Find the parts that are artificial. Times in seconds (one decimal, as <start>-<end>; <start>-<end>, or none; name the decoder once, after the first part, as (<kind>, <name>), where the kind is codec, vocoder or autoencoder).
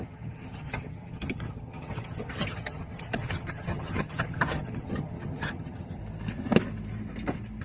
0.0-6.0 (vocoder, HiFi-GAN)